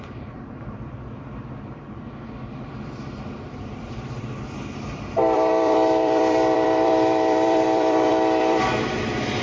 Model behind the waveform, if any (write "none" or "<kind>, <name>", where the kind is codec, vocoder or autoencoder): vocoder, BigVGAN v2